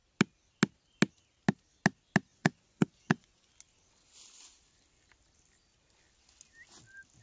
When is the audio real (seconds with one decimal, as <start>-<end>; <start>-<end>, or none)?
0.0-2.3; 3.5-7.2